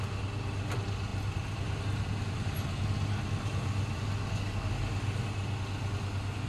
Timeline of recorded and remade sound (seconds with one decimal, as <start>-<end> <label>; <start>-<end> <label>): 0.0-6.5 recorded